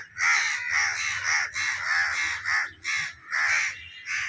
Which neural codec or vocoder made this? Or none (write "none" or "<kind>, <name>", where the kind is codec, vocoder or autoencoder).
none